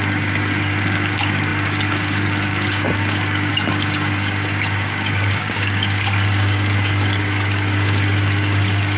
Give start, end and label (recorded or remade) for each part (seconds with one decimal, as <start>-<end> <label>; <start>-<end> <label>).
0.0-9.0 remade